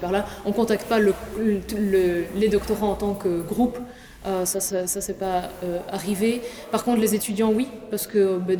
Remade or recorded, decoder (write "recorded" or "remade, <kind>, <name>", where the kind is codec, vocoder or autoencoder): recorded